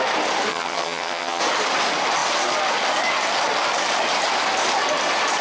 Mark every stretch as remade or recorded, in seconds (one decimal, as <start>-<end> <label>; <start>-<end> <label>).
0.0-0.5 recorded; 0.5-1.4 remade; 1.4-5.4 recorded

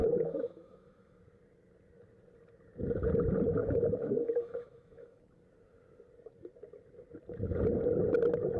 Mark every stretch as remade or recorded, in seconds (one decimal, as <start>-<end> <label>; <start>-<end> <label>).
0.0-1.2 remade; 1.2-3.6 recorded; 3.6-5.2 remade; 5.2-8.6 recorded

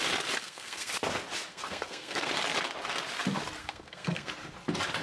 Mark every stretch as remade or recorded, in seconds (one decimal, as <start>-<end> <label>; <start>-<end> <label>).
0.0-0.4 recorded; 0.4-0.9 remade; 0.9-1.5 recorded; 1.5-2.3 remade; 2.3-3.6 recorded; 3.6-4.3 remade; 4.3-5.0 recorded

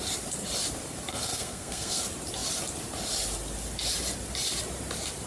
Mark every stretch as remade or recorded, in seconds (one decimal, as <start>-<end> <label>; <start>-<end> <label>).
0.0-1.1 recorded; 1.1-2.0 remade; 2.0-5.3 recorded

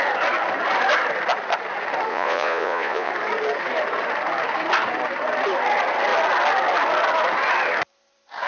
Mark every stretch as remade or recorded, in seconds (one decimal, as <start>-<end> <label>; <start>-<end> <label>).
0.0-2.1 recorded; 2.1-3.1 remade; 3.1-8.5 recorded

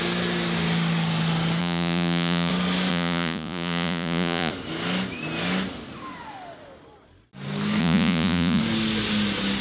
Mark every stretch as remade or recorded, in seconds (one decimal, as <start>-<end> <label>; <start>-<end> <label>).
0.0-1.6 recorded; 1.6-2.5 remade; 2.5-2.9 recorded; 2.9-4.5 remade; 4.5-7.8 recorded; 7.8-8.6 remade; 8.6-9.6 recorded

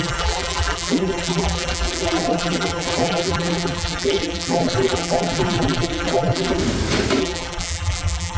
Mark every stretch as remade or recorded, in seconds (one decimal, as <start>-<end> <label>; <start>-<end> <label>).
0.0-6.6 remade; 6.6-7.2 recorded; 7.2-8.4 remade